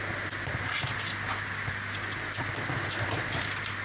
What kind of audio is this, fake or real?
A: real